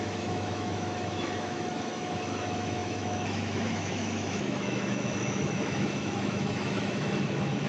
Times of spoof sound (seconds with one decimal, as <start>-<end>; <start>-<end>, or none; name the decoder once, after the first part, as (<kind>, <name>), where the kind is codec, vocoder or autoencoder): 0.0-7.7 (autoencoder, DAC-VAE)